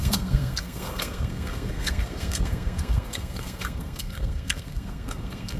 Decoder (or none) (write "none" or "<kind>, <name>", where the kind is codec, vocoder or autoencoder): codec, SNAC